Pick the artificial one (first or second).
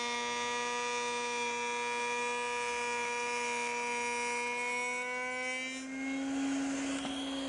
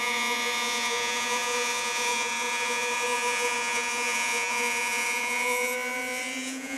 second